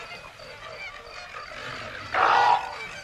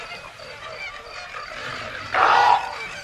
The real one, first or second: first